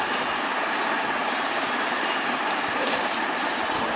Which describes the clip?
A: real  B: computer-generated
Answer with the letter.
B